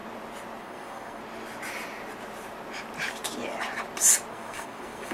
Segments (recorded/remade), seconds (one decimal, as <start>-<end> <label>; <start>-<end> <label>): 0.0-0.6 recorded; 0.6-1.2 remade; 1.2-4.3 recorded; 4.3-5.1 remade